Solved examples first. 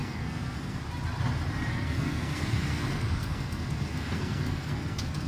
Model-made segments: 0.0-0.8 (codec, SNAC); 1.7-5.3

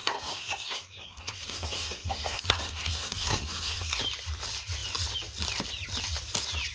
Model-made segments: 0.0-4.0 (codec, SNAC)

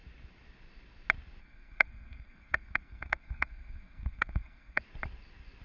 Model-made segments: 1.4-4.8 (codec, SNAC)

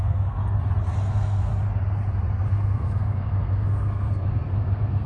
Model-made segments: 0.0-0.4 (codec, SNAC); 1.1-1.5; 2.5-5.1

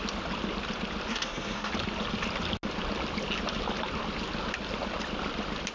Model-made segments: 1.1-1.7 (codec, SNAC)

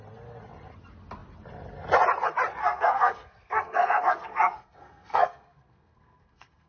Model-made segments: 2.6-6.7 (codec, SNAC)